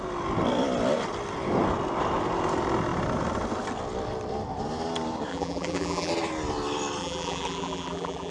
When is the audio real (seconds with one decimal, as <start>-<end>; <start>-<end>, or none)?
0.0-5.3; 6.1-7.0